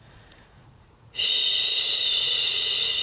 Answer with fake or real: fake